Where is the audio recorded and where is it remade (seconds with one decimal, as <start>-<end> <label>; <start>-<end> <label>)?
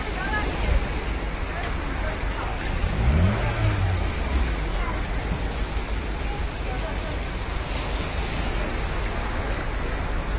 0.0-2.5 recorded; 2.5-3.8 remade; 3.8-4.7 recorded; 4.7-5.2 remade; 5.2-8.1 recorded; 8.1-8.7 remade; 8.7-9.2 recorded; 9.2-10.0 remade; 10.0-10.4 recorded